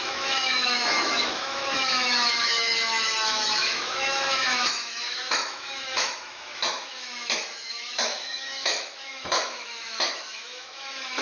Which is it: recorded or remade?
remade